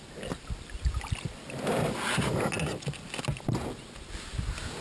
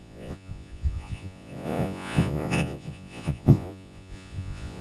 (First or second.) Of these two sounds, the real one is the first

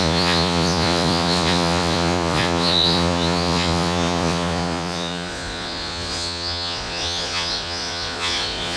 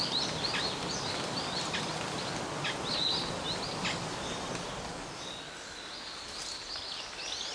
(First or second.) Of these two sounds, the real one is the second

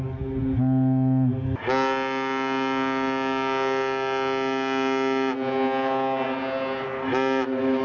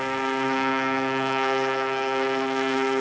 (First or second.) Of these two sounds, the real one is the first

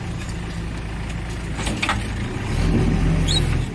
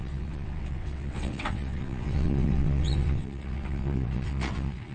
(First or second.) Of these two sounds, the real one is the first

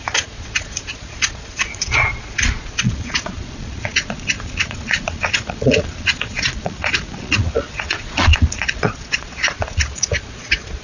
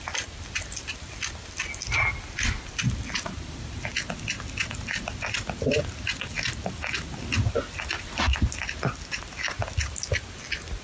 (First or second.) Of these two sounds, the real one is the second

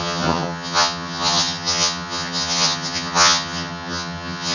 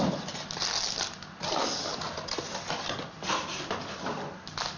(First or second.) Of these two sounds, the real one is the second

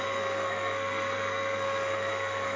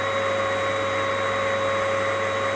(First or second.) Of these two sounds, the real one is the second